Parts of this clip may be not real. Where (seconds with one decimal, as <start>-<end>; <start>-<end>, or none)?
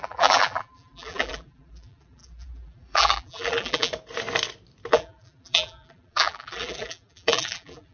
0.0-3.9; 4.9-7.9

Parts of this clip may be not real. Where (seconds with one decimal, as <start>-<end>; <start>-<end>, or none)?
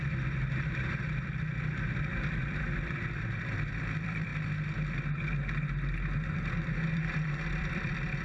0.0-4.3; 6.9-8.2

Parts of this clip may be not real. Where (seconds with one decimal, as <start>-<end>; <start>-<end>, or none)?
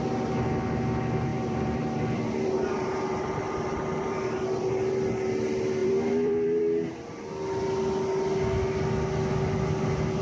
1.3-4.6; 5.8-6.6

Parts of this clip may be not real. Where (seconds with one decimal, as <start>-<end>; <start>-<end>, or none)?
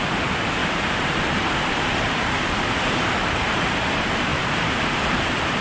0.6-3.9; 4.3-5.6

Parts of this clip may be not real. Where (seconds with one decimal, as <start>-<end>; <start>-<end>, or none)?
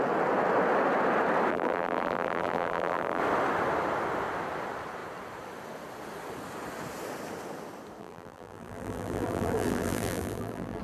1.5-3.2; 8.0-10.8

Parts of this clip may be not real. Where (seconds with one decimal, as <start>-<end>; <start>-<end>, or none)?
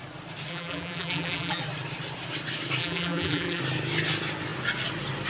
0.5-1.6; 2.8-3.6